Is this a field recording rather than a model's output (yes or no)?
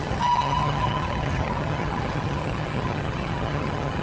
no